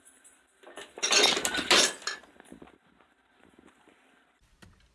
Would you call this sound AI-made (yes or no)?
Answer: no